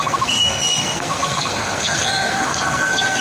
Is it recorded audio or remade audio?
remade